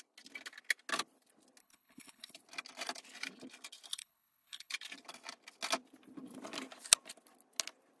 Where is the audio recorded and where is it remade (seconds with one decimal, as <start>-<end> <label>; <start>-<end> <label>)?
0.0-1.6 recorded; 1.6-2.3 remade; 2.3-3.9 recorded; 3.9-4.7 remade; 4.7-8.0 recorded